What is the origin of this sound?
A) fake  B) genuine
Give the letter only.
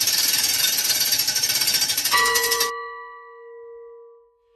A